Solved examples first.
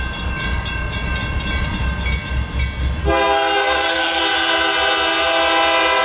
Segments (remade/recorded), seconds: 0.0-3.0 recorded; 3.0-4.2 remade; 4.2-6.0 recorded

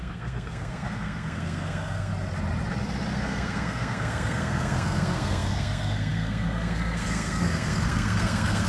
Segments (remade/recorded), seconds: 0.0-2.1 remade; 2.1-3.1 recorded; 3.1-8.7 remade

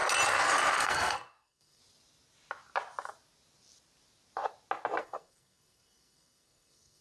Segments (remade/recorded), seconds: 0.0-0.8 recorded; 0.8-1.8 remade; 1.8-5.0 recorded; 5.0-7.0 remade

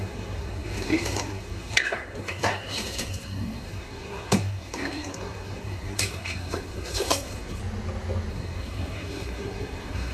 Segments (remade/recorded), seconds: 0.0-7.6 remade; 7.6-8.3 recorded; 8.3-10.1 remade